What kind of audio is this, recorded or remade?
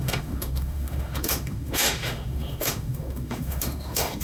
remade